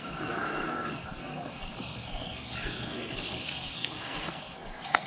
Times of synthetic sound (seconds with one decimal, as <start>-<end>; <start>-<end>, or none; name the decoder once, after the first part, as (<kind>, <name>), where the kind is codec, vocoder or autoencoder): 0.0-5.1 (codec, SNAC)